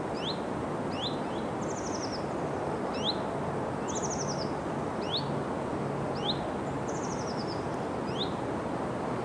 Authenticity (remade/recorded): recorded